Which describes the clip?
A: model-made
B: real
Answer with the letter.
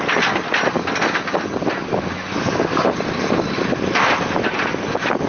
B